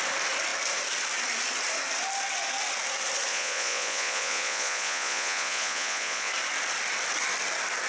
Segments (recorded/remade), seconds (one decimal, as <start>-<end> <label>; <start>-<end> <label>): 0.0-3.3 recorded; 3.3-6.3 remade; 6.3-7.9 recorded